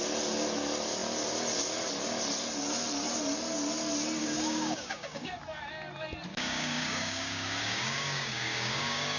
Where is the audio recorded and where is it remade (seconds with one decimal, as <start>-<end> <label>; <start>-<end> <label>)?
0.0-4.2 recorded; 4.2-5.3 remade; 5.3-6.3 recorded; 6.3-9.2 remade